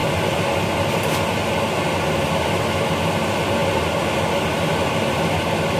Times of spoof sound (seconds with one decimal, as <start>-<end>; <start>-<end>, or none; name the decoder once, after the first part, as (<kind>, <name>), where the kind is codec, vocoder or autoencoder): none